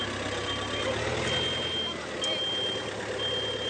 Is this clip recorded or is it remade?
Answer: recorded